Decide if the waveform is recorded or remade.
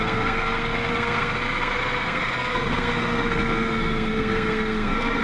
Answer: remade